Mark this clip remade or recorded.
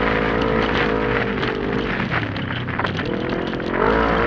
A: recorded